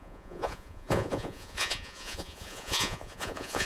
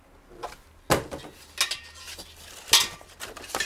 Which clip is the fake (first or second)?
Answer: first